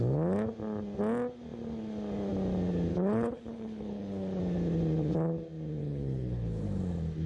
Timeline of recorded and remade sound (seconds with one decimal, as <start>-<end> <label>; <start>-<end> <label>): 0.0-2.9 recorded; 2.9-4.4 remade; 4.4-5.8 recorded; 5.8-6.8 remade; 6.8-7.3 recorded